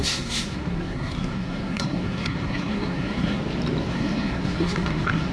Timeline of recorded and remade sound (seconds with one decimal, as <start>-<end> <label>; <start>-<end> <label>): 0.0-3.4 remade; 3.4-3.9 recorded; 3.9-5.3 remade